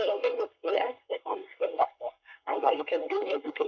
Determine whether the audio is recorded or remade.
remade